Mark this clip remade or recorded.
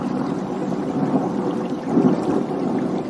recorded